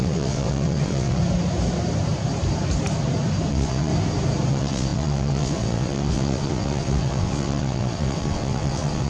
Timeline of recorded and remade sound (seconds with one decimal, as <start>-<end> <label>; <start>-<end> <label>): 0.0-1.2 remade; 1.2-3.5 recorded; 3.5-3.9 remade; 3.9-4.5 recorded; 4.5-9.1 remade